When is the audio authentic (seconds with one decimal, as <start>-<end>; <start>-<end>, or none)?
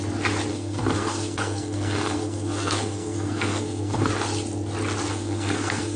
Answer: 0.0-0.5; 4.1-5.1